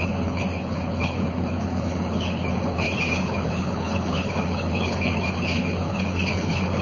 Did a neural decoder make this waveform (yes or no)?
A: yes